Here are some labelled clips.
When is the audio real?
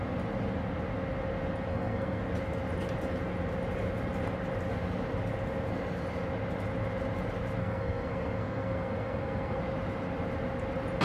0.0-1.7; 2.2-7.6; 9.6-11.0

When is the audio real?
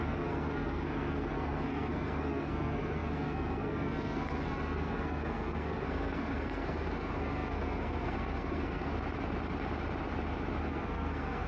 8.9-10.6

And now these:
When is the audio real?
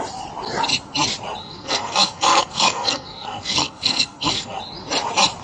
0.0-1.4; 4.6-5.4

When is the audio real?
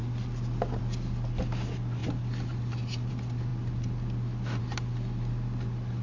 0.0-6.0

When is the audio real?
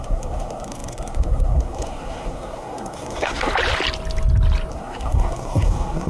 3.5-4.7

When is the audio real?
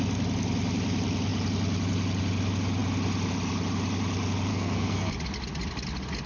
0.0-4.5; 5.1-6.3